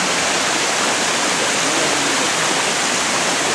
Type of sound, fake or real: real